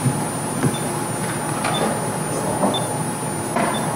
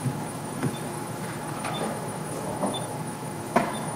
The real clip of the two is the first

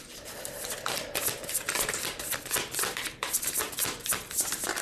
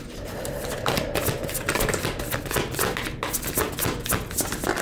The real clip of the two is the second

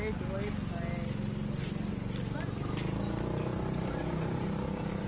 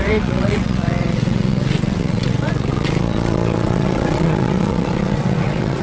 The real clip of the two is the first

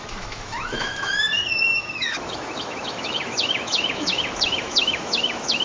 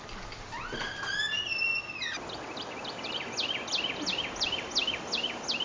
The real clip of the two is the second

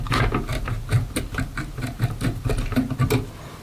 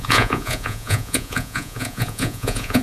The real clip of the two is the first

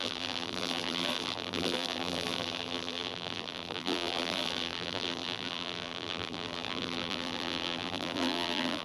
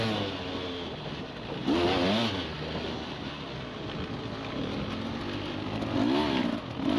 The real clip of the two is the second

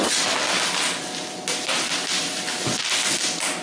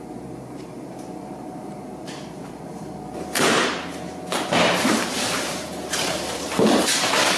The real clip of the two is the first